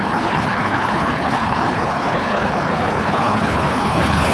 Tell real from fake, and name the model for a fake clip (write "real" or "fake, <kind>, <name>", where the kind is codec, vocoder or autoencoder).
fake, codec, HILCodec